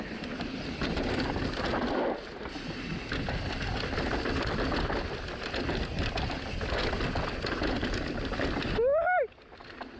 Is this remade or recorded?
recorded